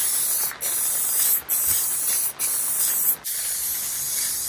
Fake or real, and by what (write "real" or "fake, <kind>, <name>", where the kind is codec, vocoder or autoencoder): real